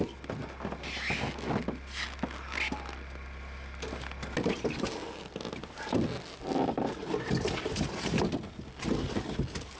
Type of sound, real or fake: real